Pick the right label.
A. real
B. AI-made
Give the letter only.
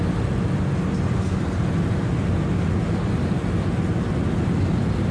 A